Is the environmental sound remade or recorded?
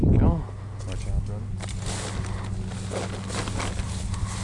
recorded